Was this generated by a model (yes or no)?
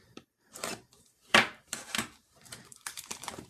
yes